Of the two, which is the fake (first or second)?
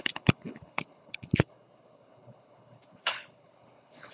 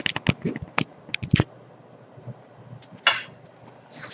first